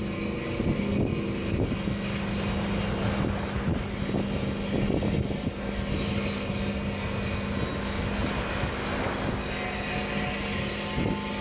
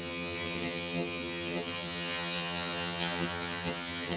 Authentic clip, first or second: first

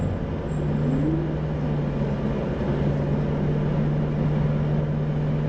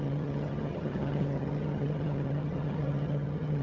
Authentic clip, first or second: first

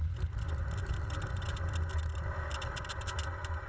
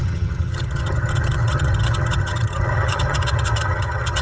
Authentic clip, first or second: first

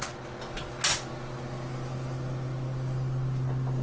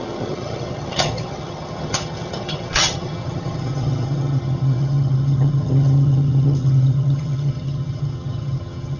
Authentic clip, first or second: first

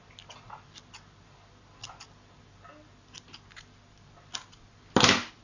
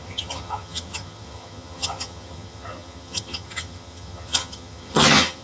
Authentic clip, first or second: first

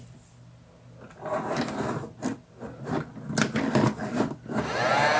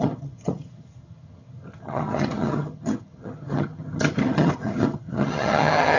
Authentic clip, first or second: first